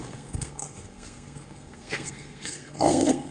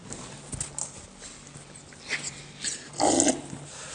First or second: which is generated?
first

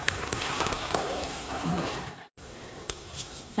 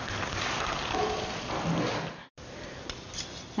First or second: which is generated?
first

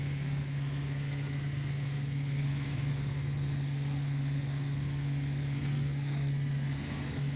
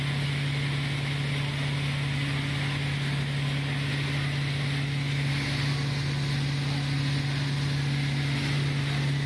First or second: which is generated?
first